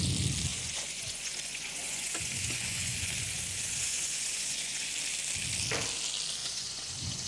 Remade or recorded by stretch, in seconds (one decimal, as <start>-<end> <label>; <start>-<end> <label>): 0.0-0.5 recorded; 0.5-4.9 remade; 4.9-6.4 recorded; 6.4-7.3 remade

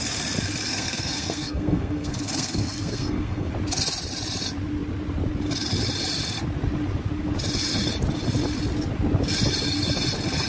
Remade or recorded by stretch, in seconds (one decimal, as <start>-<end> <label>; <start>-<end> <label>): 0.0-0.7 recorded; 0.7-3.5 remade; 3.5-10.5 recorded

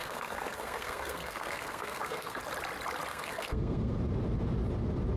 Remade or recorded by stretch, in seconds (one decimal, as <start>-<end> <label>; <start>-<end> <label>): 0.0-2.4 remade; 2.4-3.1 recorded; 3.1-4.0 remade; 4.0-5.2 recorded